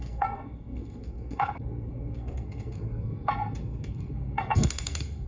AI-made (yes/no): yes